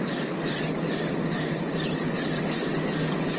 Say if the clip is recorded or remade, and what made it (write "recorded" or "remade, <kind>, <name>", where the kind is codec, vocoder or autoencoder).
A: recorded